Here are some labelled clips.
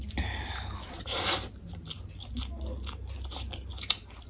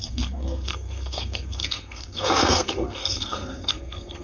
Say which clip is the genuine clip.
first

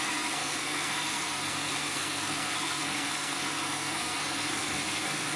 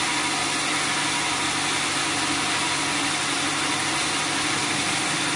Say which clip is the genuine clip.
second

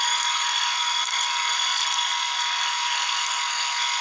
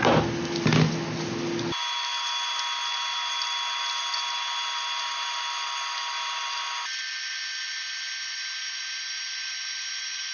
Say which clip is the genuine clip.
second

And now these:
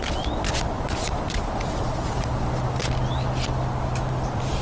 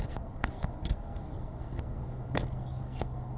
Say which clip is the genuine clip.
first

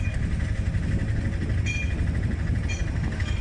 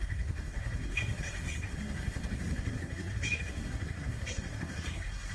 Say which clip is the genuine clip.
first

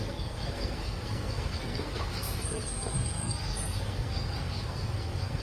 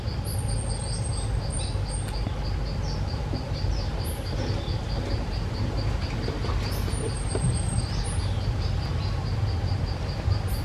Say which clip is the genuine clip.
second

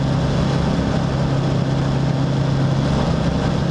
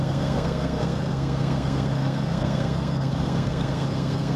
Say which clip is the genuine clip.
first